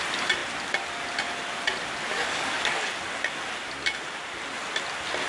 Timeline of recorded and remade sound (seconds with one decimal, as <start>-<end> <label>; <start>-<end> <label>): 0.0-2.1 recorded; 2.1-3.2 remade; 3.2-5.3 recorded